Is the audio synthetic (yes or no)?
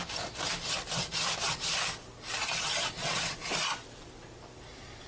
yes